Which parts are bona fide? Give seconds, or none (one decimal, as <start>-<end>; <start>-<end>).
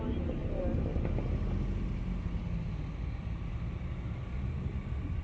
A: 0.0-5.2